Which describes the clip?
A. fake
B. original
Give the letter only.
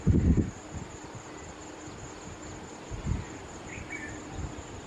B